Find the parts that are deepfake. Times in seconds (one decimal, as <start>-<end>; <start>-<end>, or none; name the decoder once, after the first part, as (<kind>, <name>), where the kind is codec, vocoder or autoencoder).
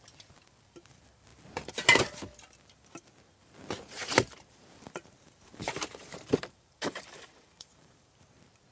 4.0-8.1 (vocoder, BigVGAN v2)